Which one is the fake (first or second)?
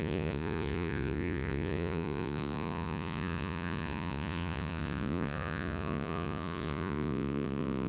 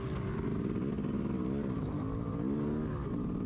first